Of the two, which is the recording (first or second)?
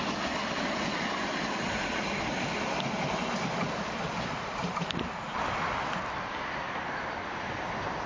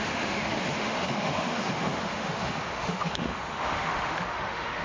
first